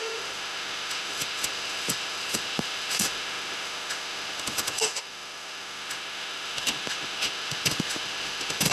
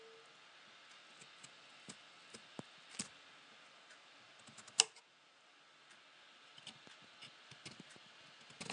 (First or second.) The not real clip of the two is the first